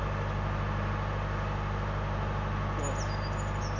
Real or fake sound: real